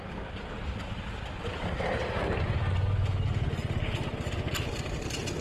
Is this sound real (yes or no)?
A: yes